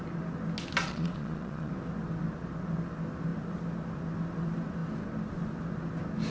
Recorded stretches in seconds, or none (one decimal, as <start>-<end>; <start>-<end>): 0.0-0.8; 1.7-6.3